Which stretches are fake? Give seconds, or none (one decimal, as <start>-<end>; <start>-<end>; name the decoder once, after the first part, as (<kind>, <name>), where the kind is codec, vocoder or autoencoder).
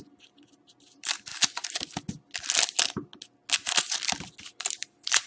0.0-1.3 (vocoder, BigVGAN v2); 4.5-5.3